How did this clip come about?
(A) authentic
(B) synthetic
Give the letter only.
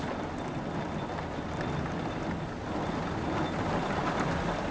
A